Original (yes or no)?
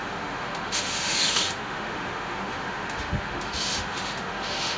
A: no